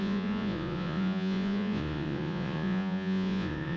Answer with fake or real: fake